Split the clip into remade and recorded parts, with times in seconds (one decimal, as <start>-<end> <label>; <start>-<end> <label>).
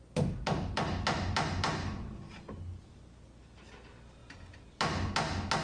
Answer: 0.0-5.6 recorded